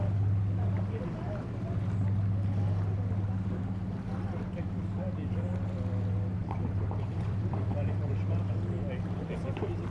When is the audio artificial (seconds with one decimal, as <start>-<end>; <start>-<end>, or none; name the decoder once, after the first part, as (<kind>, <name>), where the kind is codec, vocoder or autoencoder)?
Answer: 6.4-8.1 (vocoder, BigVGAN v2)